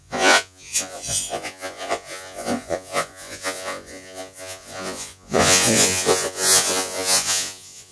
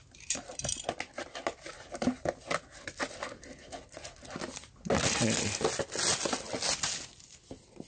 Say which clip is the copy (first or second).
first